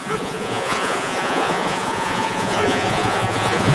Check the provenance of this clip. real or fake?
fake